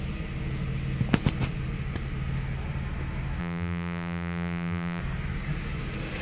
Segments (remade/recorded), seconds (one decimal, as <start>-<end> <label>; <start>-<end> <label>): 0.0-3.4 recorded; 3.4-5.0 remade; 5.0-6.2 recorded